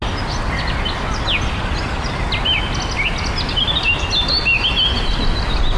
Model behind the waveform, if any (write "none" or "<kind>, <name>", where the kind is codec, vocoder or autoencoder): none